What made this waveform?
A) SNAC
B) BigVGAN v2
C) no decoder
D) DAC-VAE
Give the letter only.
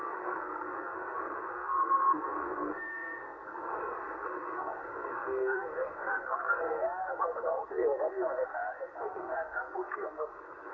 A